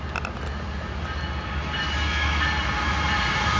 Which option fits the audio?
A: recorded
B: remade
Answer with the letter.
A